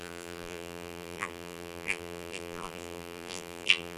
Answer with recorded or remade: remade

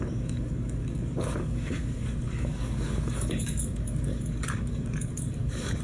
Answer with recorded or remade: remade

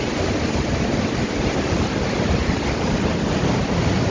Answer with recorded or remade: recorded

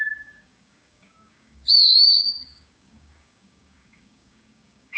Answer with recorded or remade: remade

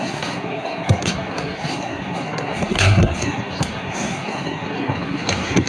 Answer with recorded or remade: remade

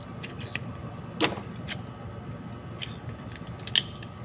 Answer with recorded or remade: recorded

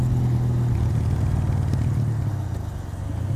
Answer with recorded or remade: recorded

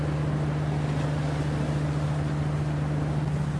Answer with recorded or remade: recorded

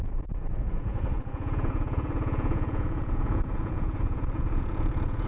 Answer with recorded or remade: remade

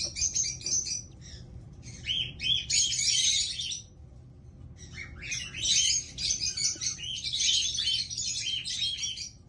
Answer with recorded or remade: remade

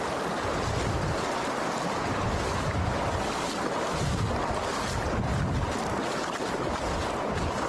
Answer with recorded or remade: recorded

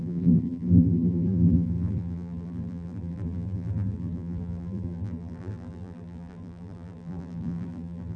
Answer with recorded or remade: remade